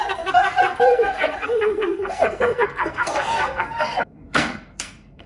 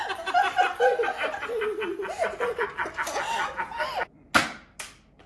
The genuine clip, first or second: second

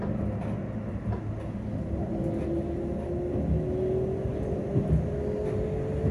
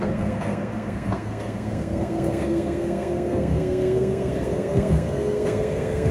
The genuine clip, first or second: first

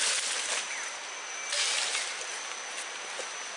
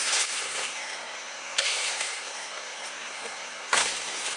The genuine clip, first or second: first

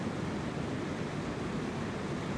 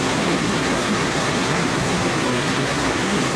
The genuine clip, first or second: first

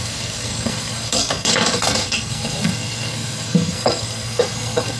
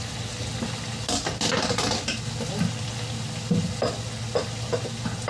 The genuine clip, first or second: second